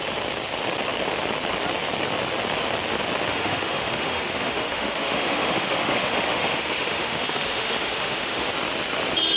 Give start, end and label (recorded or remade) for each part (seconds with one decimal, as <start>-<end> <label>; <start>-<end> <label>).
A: 0.0-3.3 recorded; 3.3-8.5 remade; 8.5-9.4 recorded